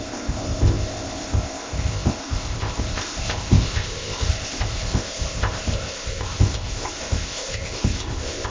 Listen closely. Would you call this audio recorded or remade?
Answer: remade